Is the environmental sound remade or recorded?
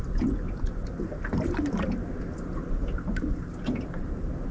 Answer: recorded